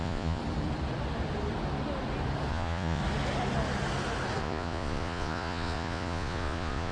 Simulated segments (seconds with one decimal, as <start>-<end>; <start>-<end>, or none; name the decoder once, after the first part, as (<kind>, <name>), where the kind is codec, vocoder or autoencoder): 0.0-0.4 (vocoder, Vocos); 2.5-3.0; 4.4-6.9